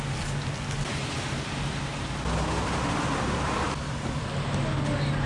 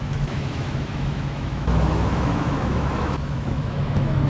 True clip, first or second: first